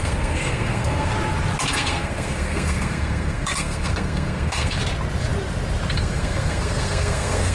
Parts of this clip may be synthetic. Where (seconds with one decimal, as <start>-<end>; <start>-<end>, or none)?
0.0-1.1; 1.7-4.8; 5.9-7.5